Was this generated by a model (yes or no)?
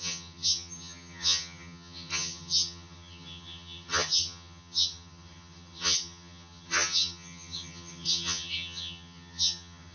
yes